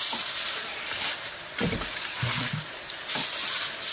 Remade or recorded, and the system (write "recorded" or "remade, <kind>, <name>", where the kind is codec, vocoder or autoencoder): recorded